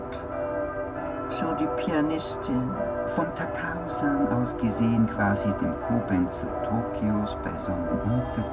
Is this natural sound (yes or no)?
yes